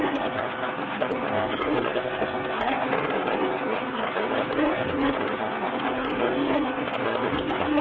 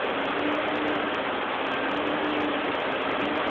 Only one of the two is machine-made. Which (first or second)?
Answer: first